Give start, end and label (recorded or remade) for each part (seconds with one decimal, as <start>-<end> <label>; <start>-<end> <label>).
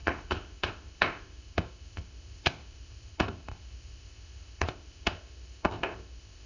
0.0-6.5 remade